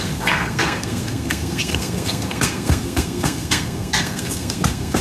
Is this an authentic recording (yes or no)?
no